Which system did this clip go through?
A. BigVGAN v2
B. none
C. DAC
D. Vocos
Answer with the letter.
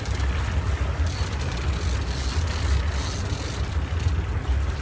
B